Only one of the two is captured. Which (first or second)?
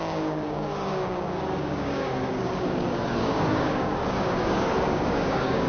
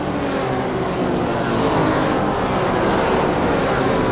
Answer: second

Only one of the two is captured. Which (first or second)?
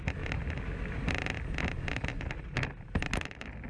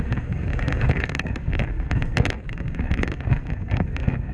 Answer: first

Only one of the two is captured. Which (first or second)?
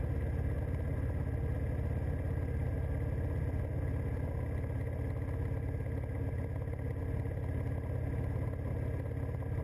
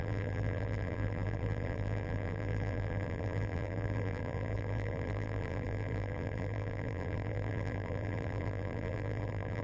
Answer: first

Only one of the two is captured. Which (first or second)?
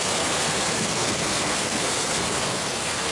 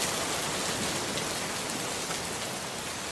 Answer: second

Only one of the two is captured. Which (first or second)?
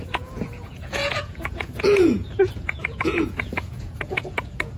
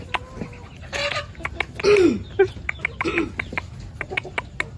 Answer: second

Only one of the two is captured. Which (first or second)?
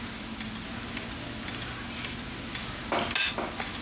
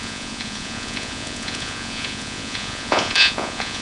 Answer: first